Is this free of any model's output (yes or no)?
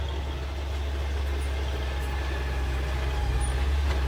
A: yes